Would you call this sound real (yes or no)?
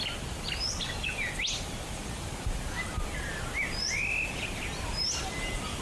yes